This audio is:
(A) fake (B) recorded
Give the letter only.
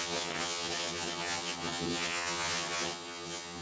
A